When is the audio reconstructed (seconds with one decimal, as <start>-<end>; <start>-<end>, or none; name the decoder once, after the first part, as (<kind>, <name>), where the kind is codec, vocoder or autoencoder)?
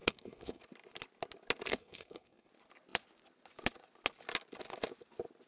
0.0-0.6 (codec, SNAC); 1.7-2.5